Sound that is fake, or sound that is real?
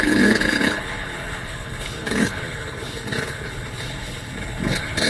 fake